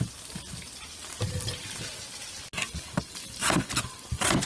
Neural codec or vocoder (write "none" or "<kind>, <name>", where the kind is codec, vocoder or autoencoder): none